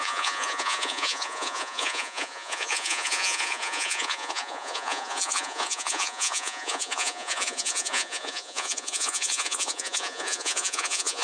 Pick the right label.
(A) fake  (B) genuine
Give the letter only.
A